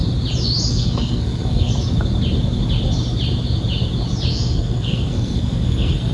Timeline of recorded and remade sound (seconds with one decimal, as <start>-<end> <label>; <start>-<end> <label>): 0.0-0.7 recorded; 0.7-1.7 remade; 1.7-4.3 recorded; 4.3-6.1 remade